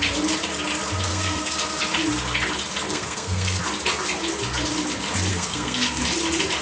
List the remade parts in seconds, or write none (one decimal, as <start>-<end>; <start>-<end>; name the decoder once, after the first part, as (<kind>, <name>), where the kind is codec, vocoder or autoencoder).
1.1-1.8 (codec, SNAC); 2.9-3.6; 5.3-6.0